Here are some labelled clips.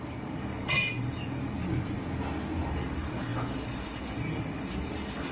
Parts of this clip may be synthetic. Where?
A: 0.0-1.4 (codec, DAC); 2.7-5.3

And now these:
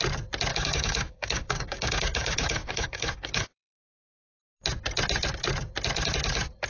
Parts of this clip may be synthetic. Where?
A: 0.5-3.9 (codec, DAC)

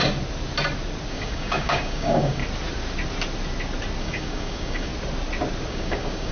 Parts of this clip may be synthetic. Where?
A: 1.1-2.4 (codec, DAC); 4.0-4.9; 5.7-6.3

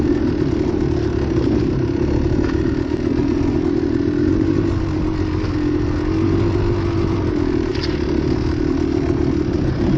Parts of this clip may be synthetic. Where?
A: none